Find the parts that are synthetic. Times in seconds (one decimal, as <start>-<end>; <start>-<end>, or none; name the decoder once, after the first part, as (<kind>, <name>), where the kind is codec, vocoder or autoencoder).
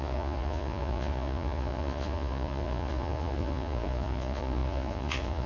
0.0-5.5 (vocoder, Vocos)